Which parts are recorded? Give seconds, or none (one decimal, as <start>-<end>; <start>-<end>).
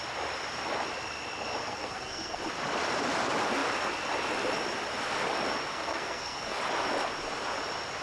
0.0-1.6; 2.4-5.7; 6.6-8.0